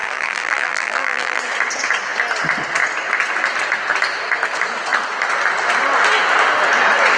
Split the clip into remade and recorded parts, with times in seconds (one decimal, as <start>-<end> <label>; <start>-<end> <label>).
0.0-1.4 remade; 1.4-7.2 recorded